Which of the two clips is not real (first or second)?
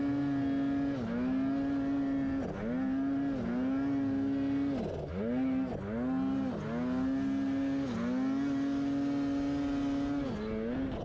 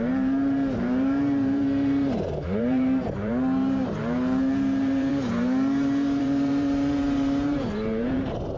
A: second